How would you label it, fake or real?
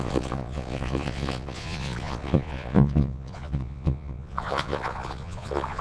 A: fake